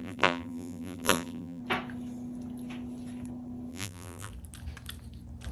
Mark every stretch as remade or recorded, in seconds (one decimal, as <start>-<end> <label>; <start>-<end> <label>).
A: 0.0-1.6 remade; 1.6-3.7 recorded; 3.7-4.3 remade; 4.3-5.5 recorded